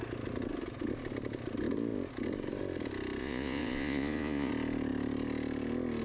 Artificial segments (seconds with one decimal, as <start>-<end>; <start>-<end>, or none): 3.2-4.5